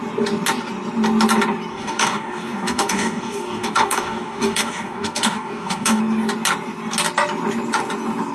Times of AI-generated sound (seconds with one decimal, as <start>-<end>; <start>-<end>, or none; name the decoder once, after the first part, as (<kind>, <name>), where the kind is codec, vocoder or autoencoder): 1.7-6.0 (codec, DAC)